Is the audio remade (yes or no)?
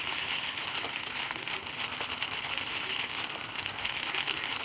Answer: no